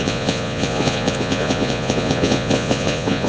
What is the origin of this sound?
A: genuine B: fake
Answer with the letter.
B